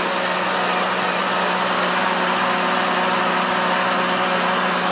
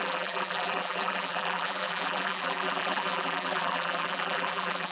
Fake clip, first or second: second